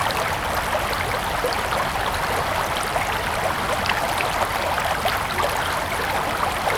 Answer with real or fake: real